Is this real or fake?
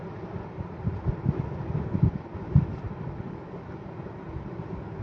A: real